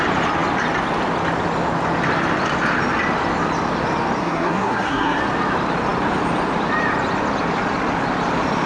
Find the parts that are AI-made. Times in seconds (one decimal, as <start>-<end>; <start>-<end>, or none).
4.2-5.2